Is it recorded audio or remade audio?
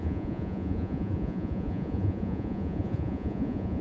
remade